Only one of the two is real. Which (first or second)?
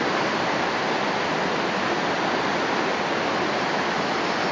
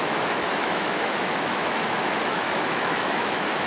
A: first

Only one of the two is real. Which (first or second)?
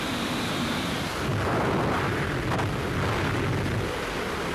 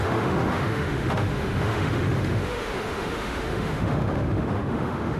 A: first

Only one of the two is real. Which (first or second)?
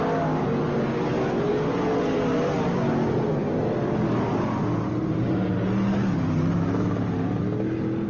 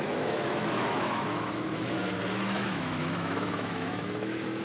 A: first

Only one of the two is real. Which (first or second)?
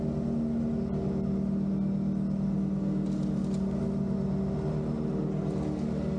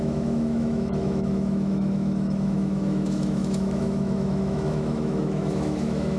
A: first